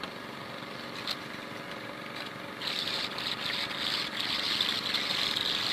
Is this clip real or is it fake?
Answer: real